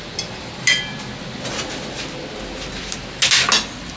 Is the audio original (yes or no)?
yes